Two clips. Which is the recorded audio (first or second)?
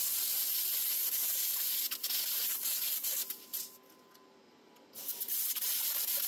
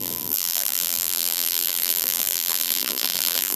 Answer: first